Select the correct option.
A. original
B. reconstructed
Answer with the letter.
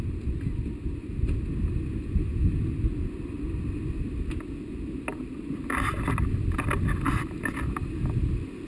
A